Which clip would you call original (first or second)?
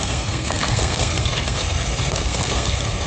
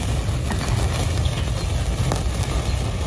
second